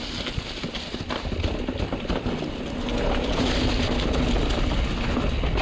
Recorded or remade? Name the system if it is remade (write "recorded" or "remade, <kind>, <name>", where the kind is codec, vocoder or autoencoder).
recorded